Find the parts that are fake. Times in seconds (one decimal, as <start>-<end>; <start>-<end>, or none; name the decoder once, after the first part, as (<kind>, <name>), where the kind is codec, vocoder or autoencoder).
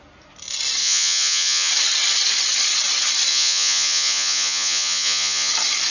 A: 0.8-1.7 (vocoder, Vocos); 3.3-5.5